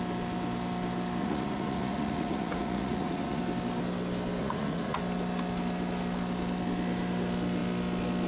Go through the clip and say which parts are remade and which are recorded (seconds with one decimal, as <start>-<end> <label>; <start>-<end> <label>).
0.0-1.2 recorded; 1.2-3.4 remade; 3.4-4.4 recorded; 4.4-5.0 remade; 5.0-8.3 recorded